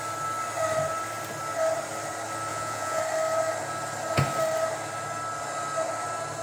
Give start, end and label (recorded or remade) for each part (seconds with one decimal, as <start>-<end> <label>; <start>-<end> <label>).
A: 0.0-2.5 recorded; 2.5-3.0 remade; 3.0-6.4 recorded